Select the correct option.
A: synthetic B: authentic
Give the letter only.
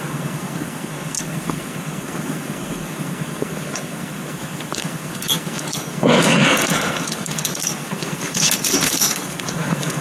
A